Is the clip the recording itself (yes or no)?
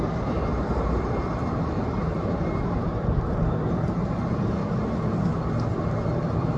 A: no